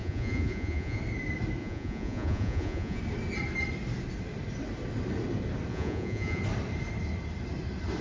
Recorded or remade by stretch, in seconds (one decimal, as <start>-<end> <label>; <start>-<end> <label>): 0.0-1.0 remade; 1.0-1.6 recorded; 1.6-3.0 remade; 3.0-5.7 recorded; 5.7-6.4 remade; 6.4-8.0 recorded